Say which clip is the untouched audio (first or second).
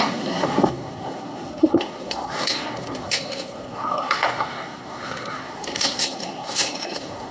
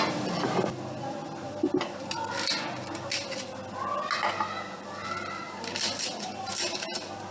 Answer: second